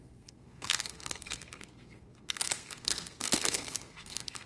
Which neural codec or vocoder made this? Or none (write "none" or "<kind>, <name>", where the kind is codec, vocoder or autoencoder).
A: codec, SNAC